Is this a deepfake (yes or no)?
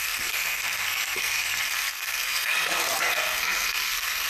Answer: yes